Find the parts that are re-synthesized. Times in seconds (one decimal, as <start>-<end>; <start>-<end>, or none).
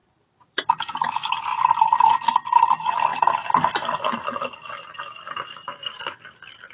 0.0-1.5; 2.6-6.7